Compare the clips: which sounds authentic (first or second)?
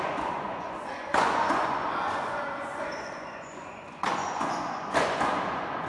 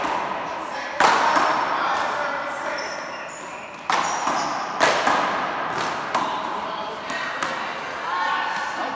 second